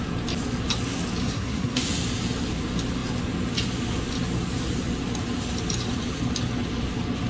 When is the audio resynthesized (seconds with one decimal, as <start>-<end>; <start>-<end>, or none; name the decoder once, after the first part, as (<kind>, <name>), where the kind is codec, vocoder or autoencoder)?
1.2-1.8 (codec, SNAC)